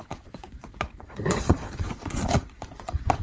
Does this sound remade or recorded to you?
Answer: remade